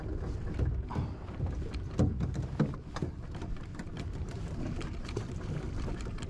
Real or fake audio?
real